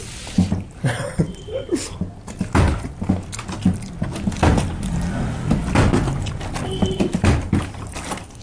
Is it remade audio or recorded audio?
recorded